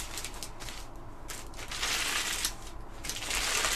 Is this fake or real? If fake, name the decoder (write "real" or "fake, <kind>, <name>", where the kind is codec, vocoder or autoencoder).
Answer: real